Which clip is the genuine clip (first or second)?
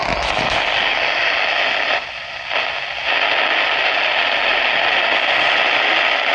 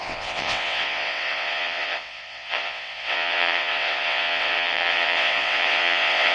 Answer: first